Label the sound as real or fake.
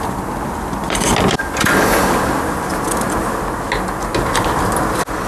real